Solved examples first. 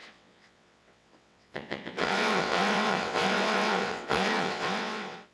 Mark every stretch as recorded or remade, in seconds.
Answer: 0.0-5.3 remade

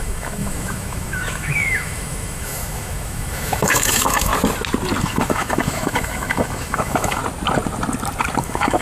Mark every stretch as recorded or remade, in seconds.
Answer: 0.0-4.3 remade; 4.3-5.0 recorded; 5.0-7.2 remade; 7.2-8.4 recorded; 8.4-8.8 remade

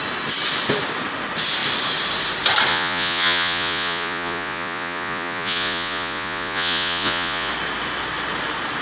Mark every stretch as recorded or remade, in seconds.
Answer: 0.0-2.7 recorded; 2.7-7.5 remade; 7.5-8.8 recorded

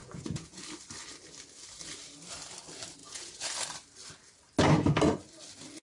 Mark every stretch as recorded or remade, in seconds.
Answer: 0.0-0.6 remade; 0.6-3.0 recorded; 3.0-3.5 remade; 3.5-5.9 recorded

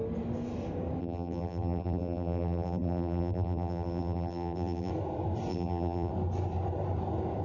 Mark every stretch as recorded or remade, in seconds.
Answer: 0.0-1.0 recorded; 1.0-4.9 remade; 4.9-5.5 recorded; 5.5-6.1 remade; 6.1-7.4 recorded

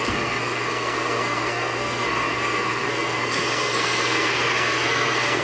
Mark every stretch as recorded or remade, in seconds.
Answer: 0.0-5.4 remade

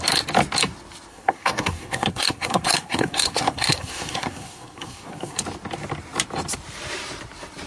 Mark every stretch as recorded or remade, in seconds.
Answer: 0.0-1.1 recorded; 1.1-5.4 remade; 5.4-7.7 recorded